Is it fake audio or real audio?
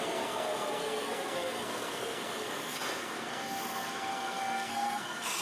fake